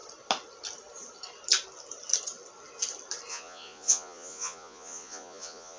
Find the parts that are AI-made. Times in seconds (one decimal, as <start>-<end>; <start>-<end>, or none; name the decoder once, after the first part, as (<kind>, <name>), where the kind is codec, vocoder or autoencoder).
3.3-5.8 (vocoder, Vocos)